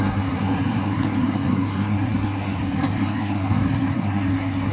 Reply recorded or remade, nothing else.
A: remade